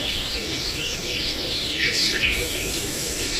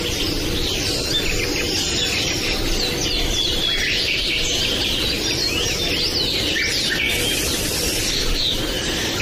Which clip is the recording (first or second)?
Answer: second